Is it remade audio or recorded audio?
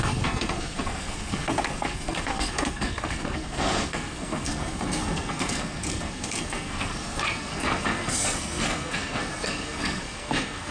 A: remade